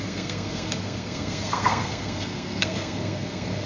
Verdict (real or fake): fake